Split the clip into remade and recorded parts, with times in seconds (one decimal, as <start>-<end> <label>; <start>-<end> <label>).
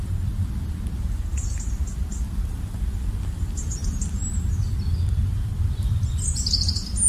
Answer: 0.0-7.1 recorded